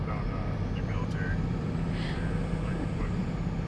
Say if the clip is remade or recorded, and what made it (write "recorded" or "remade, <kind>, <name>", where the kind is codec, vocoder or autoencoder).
remade, vocoder, BigVGAN v2